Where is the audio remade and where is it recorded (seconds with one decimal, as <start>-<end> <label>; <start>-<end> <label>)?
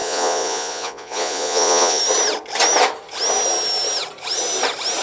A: 0.0-2.0 remade; 2.0-5.0 recorded